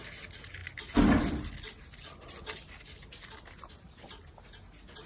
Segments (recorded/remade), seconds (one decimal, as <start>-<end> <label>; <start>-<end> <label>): 0.0-5.1 recorded